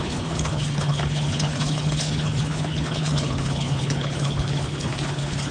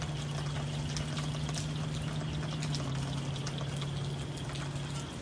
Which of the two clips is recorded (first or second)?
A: second